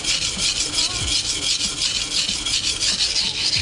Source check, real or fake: real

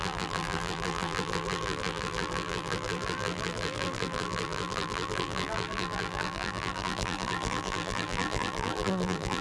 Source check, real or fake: fake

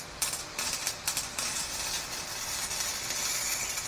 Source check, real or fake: fake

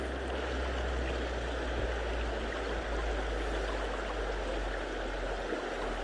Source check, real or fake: real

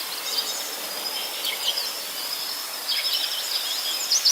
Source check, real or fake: real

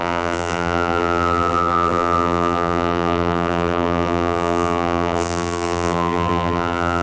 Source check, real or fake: fake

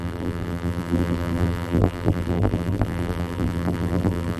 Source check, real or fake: fake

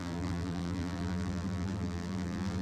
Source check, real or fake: fake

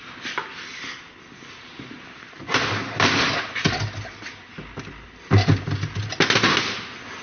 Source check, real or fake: real